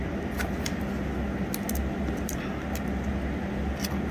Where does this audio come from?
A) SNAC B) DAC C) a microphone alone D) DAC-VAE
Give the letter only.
C